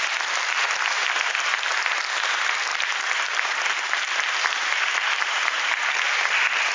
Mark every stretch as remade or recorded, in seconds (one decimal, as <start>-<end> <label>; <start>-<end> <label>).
0.0-2.7 recorded; 2.7-6.3 remade; 6.3-6.7 recorded